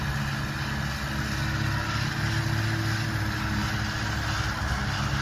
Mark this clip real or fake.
real